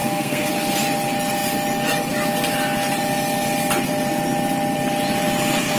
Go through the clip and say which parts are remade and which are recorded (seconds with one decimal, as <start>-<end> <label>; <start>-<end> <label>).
0.0-0.5 remade; 0.5-5.8 recorded